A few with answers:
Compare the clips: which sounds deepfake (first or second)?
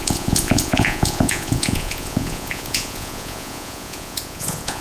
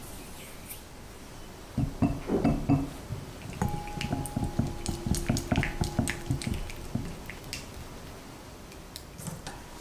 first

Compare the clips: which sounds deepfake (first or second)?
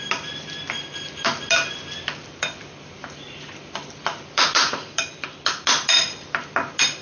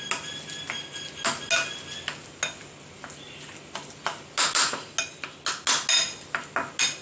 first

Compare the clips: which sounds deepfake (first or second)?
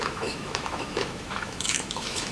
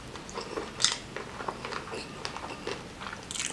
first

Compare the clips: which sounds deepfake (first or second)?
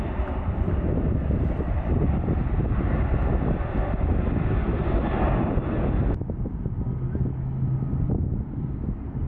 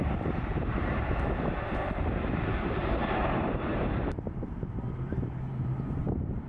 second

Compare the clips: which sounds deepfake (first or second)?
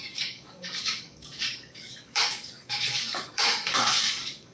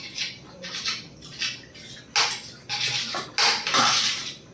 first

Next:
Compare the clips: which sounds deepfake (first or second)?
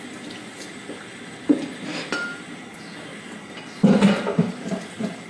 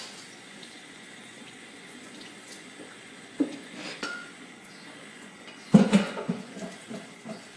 second